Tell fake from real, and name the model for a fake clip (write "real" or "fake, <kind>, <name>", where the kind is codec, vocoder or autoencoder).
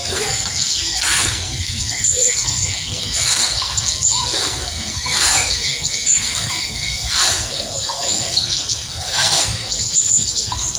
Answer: fake, codec, SNAC